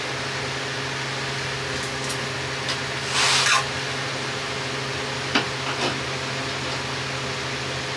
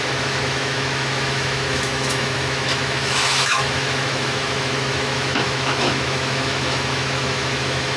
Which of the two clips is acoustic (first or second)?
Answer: first